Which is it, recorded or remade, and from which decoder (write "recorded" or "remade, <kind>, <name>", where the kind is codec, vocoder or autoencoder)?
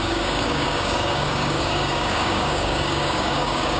remade, codec, DAC